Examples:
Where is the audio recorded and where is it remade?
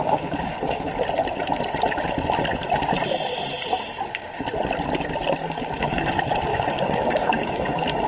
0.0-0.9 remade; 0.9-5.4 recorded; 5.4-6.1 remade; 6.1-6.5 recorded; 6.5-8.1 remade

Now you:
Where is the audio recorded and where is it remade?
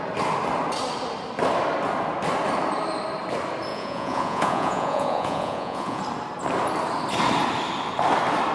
0.0-3.7 recorded; 3.7-6.0 remade; 6.0-8.5 recorded